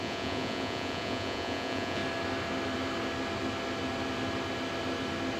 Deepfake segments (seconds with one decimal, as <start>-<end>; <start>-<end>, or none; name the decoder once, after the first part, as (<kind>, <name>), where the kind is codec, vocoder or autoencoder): 0.0-2.0 (vocoder, Vocos)